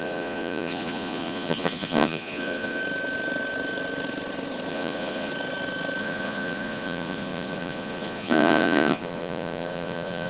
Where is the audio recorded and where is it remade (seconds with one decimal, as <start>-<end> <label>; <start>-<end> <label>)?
0.0-2.8 remade; 2.8-4.7 recorded; 4.7-5.3 remade; 5.3-6.0 recorded; 6.0-10.3 remade